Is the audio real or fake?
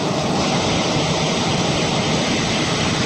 real